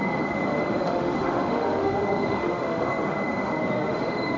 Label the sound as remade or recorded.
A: remade